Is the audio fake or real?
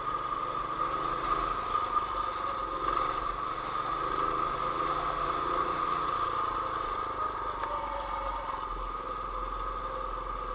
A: real